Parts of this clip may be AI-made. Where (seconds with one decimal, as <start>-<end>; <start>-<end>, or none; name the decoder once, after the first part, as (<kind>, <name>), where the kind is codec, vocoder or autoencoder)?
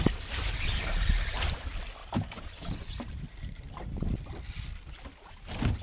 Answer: 2.0-4.2 (vocoder, BigVGAN v2)